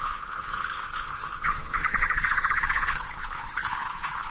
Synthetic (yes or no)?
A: yes